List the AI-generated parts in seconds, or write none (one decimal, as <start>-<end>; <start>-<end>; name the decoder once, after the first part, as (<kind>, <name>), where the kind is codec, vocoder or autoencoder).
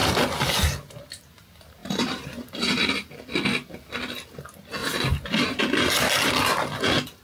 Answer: 1.8-3.1 (vocoder, BigVGAN v2); 4.8-5.6